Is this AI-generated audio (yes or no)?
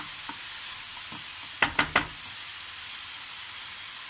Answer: no